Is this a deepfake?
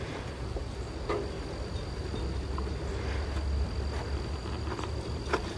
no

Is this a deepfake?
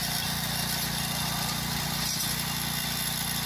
no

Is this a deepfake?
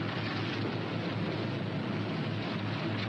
no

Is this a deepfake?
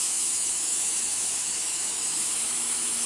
yes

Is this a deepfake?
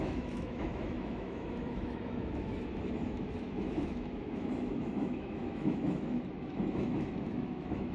yes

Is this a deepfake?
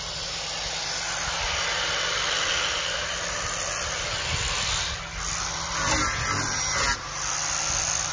no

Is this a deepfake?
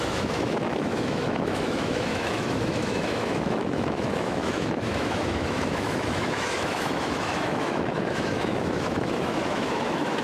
yes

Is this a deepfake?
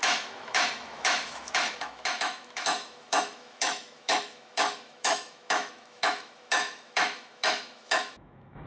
yes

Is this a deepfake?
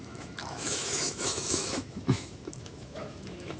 yes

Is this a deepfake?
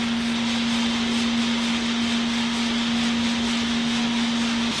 no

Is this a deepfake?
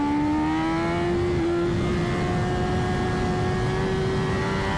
no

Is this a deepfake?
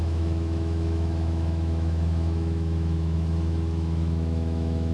yes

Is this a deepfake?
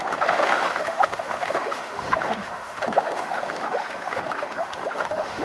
yes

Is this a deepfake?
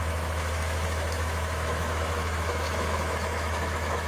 yes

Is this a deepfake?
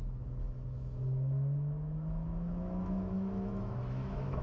yes